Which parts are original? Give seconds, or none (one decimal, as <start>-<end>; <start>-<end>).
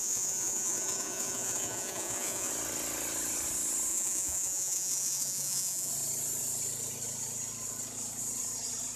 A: 2.5-3.9; 5.9-9.0